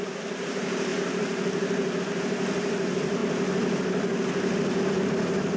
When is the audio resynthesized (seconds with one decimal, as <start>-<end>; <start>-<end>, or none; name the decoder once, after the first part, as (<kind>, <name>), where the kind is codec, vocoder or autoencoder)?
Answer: 0.0-0.9 (vocoder, BigVGAN v2); 2.0-3.2; 4.9-5.6